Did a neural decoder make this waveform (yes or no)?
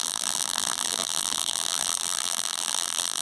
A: yes